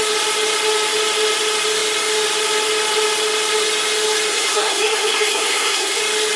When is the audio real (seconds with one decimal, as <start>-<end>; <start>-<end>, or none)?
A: 0.0-4.3; 6.0-6.4